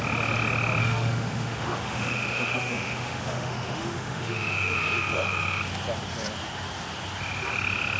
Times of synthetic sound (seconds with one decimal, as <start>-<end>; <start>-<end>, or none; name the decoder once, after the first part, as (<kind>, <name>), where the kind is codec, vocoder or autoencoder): 0.8-5.6 (autoencoder, DAC-VAE)